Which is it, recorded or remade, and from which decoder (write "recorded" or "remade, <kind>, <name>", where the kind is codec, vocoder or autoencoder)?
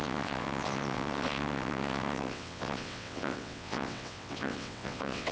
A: remade, vocoder, WaveNeXt